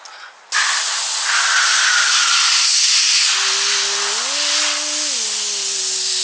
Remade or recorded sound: recorded